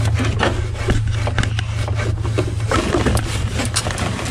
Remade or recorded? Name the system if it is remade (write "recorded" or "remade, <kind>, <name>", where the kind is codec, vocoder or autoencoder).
recorded